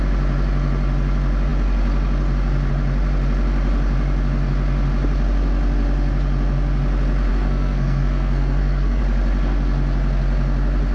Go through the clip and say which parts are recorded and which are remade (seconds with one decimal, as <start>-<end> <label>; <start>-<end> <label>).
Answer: 0.0-7.3 recorded; 7.3-9.0 remade; 9.0-10.9 recorded